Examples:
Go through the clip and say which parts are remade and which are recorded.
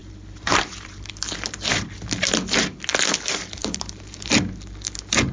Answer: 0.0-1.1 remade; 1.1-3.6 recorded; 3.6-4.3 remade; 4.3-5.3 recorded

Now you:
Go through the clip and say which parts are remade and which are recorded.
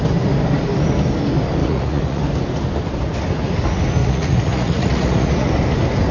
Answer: 0.0-1.6 recorded; 1.6-2.2 remade; 2.2-4.0 recorded; 4.0-5.5 remade; 5.5-6.1 recorded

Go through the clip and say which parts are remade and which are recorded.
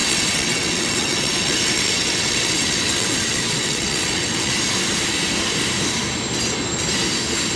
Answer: 0.0-4.5 remade; 4.5-7.6 recorded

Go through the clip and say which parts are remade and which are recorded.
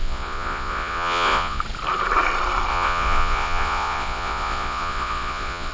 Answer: 0.0-1.6 remade; 1.6-2.7 recorded; 2.7-5.7 remade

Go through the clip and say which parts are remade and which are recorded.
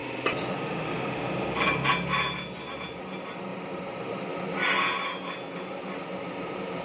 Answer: 0.0-3.5 recorded; 3.5-4.3 remade; 4.3-6.8 recorded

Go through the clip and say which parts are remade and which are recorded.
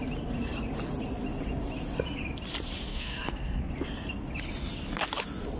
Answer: 0.0-2.9 recorded; 2.9-3.7 remade; 3.7-5.6 recorded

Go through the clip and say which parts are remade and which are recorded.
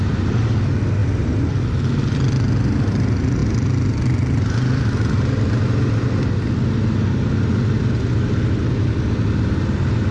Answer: 0.0-1.0 recorded; 1.0-1.5 remade; 1.5-10.1 recorded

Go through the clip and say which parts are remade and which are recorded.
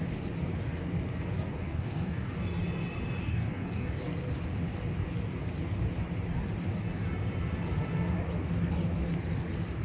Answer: 0.0-1.5 recorded; 1.5-2.3 remade; 2.3-3.2 recorded; 3.2-4.0 remade; 4.0-9.8 recorded